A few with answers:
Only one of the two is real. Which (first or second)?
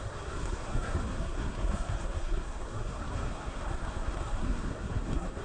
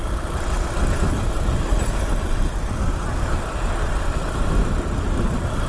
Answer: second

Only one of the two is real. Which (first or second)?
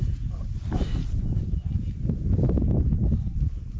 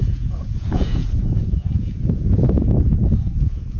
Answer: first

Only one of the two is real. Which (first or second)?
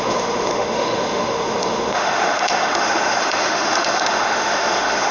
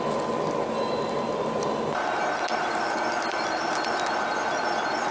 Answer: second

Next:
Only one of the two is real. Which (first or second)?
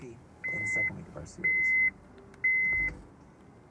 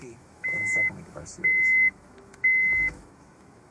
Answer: first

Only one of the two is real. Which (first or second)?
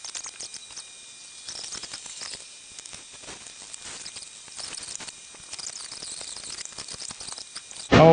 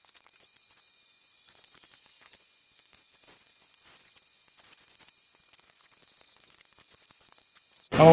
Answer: first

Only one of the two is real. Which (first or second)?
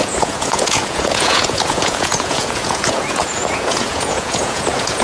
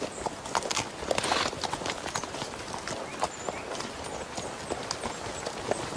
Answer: second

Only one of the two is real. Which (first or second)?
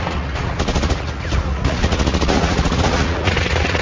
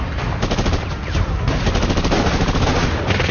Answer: second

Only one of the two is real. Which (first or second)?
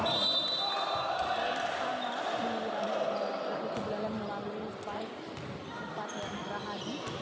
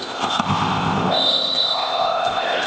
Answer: first